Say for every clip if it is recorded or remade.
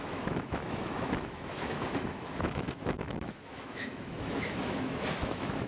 remade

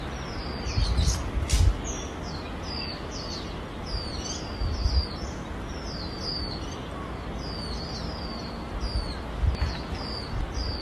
recorded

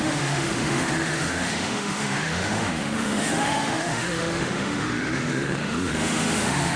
remade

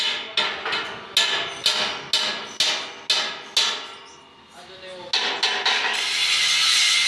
recorded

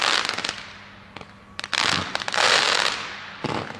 recorded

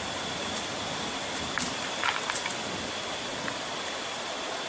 recorded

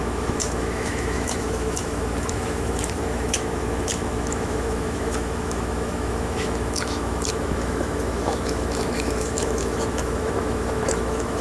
remade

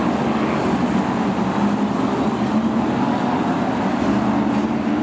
recorded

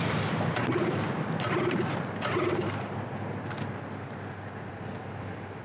recorded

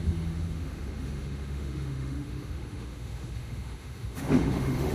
remade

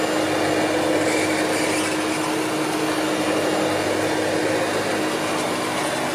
recorded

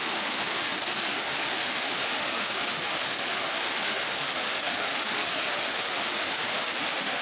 remade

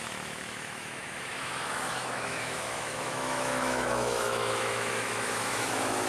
remade